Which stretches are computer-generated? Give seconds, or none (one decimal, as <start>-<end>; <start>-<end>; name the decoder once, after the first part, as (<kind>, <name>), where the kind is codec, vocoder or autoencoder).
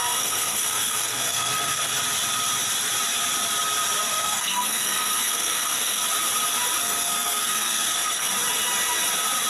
0.0-2.0 (codec, SNAC); 4.1-6.0; 6.8-8.3